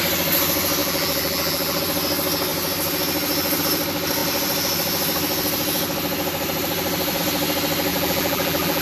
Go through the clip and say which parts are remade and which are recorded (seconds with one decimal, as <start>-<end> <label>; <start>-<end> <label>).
0.0-0.8 recorded; 0.8-1.8 remade; 1.8-7.9 recorded; 7.9-8.8 remade